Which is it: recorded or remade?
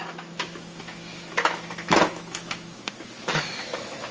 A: remade